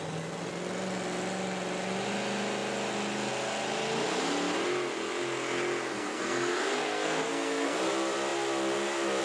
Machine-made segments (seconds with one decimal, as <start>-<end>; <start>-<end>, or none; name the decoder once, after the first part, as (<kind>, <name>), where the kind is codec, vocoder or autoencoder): 5.9-7.8 (codec, SNAC)